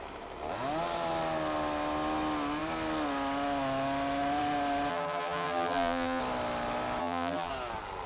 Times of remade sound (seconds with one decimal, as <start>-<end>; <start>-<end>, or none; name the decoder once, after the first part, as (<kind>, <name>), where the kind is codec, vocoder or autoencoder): 4.9-6.2 (vocoder, BigVGAN v2); 7.0-7.5